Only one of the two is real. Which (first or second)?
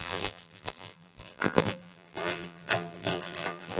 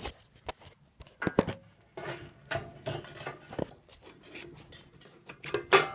second